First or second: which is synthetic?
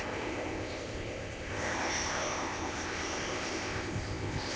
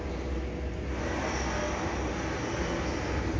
first